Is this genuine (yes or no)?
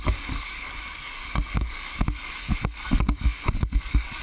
no